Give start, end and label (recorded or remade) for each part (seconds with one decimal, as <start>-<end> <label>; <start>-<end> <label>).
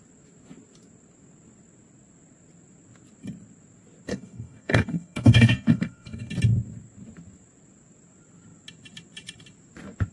0.0-4.1 recorded; 4.1-6.3 remade; 6.3-10.1 recorded